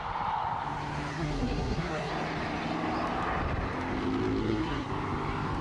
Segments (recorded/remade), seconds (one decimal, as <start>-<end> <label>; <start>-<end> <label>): 0.0-1.1 recorded; 1.1-2.1 remade; 2.1-4.4 recorded; 4.4-4.9 remade; 4.9-5.6 recorded